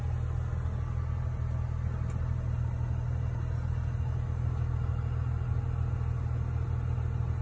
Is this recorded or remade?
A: recorded